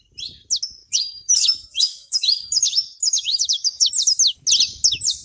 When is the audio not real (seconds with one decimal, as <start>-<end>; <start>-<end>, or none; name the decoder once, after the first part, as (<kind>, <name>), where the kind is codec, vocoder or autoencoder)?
0.8-3.9 (autoencoder, DAC-VAE)